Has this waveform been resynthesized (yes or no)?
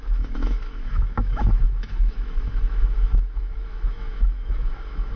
yes